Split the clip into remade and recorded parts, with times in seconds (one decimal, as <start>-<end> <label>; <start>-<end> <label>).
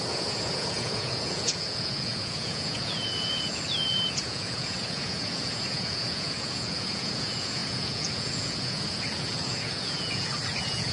0.0-10.9 remade